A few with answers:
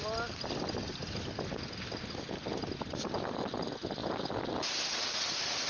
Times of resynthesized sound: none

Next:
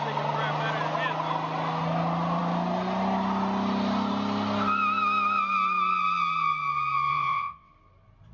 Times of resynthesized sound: 7.1-7.7 (vocoder, WaveNeXt)

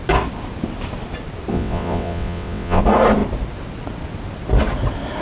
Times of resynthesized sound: 1.5-2.8 (vocoder, WaveNeXt)

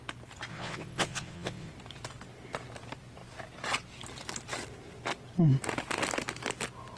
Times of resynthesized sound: 0.5-1.7 (vocoder, WaveNeXt)

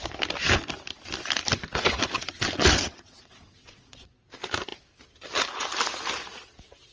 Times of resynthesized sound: 2.2-4.1 (vocoder, WaveNeXt)